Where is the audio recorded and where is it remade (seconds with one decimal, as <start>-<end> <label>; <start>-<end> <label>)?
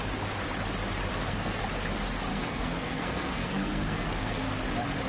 0.0-1.1 recorded; 1.1-1.6 remade; 1.6-2.3 recorded; 2.3-4.5 remade; 4.5-5.1 recorded